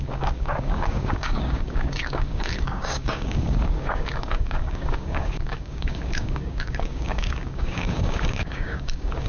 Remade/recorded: remade